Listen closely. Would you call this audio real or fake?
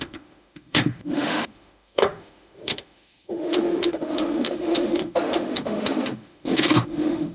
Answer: fake